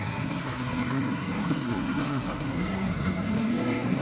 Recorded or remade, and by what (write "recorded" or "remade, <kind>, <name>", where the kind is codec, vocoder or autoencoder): remade, codec, SNAC